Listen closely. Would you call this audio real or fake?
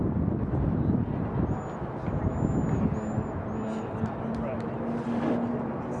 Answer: real